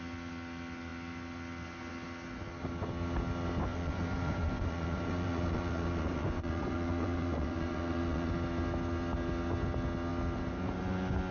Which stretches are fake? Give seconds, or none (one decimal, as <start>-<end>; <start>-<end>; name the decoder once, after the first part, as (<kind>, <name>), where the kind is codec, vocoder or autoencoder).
3.7-8.3 (vocoder, Vocos)